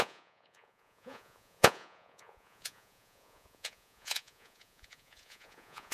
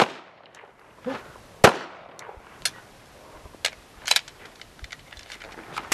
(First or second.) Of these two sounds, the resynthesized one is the first